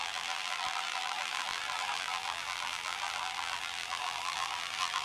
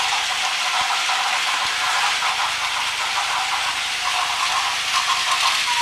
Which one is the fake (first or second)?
first